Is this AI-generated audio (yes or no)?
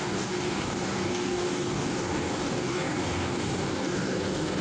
yes